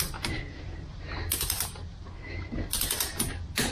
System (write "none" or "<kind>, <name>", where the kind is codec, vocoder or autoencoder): none